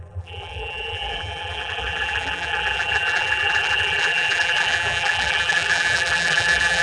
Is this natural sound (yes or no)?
no